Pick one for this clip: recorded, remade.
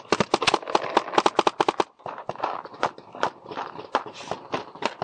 recorded